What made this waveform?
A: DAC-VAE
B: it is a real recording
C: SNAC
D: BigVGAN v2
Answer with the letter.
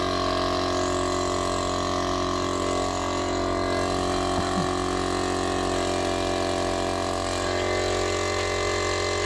B